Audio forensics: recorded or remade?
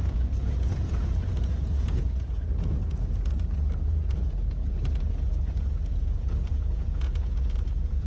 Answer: remade